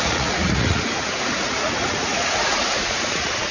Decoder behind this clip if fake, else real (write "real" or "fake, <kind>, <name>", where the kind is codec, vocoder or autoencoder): fake, vocoder, Vocos